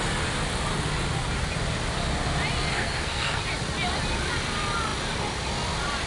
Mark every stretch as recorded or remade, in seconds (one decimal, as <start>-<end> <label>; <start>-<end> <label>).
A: 0.0-2.7 recorded; 2.7-3.4 remade; 3.4-6.1 recorded